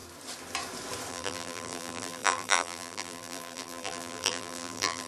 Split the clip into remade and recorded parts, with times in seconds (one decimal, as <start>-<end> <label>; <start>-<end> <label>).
0.0-1.1 recorded; 1.1-5.1 remade